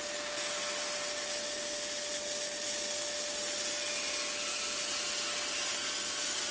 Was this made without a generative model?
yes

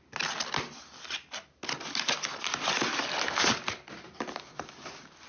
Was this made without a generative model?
yes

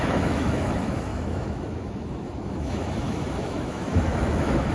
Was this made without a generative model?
no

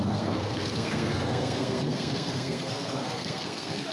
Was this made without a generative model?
no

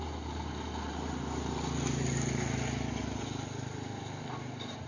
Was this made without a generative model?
yes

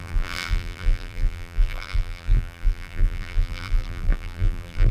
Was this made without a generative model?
no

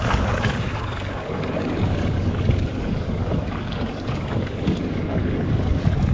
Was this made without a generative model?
no